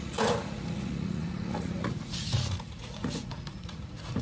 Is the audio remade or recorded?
remade